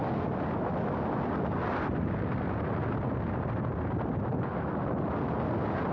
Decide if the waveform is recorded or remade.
recorded